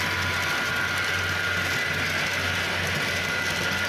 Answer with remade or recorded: recorded